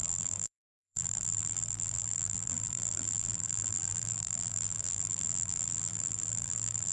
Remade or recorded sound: remade